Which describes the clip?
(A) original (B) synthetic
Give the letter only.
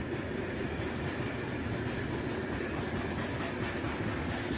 A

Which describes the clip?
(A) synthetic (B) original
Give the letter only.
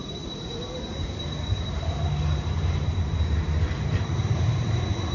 A